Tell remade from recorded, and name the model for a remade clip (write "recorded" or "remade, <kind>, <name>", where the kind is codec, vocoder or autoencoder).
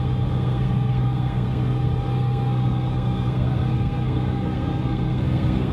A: remade, codec, SNAC